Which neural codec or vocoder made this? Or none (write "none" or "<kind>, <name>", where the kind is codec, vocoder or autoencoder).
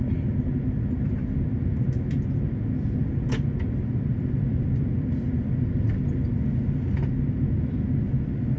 none